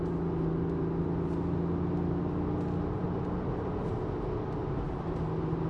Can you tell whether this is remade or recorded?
recorded